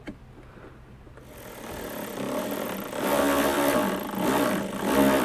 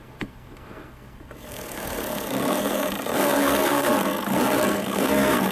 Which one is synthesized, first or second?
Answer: second